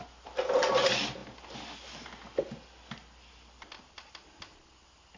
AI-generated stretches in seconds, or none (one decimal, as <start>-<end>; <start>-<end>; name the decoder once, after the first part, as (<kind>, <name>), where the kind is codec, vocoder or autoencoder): none